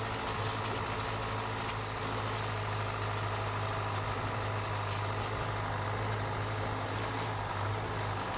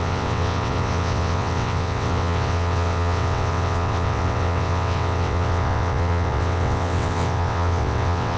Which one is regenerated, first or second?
second